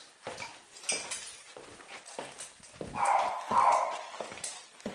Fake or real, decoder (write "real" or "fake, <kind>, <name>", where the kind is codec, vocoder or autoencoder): real